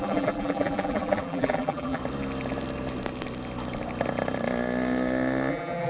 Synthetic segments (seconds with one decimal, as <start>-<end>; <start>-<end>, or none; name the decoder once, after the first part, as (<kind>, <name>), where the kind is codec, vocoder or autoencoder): 0.0-2.0 (vocoder, BigVGAN v2); 5.5-5.9